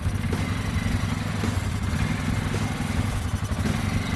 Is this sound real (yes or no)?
yes